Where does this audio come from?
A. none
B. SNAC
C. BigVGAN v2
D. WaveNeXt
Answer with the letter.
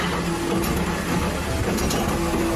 A